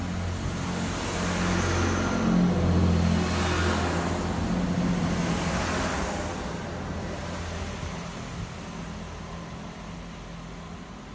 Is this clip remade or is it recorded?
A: recorded